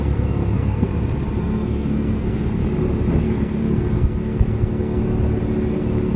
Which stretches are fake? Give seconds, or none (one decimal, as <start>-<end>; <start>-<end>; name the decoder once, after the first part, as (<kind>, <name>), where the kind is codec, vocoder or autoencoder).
0.0-0.9 (codec, SNAC); 1.4-2.6; 3.2-5.0; 5.7-6.2